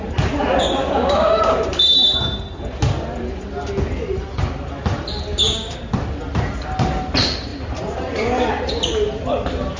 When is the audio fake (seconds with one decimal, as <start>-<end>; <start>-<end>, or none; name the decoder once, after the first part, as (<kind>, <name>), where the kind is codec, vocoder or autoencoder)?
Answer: 0.8-1.4 (codec, DAC); 5.3-5.8